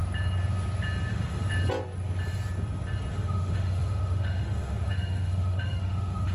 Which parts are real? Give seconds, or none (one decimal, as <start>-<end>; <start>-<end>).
0.0-1.1; 1.5-3.1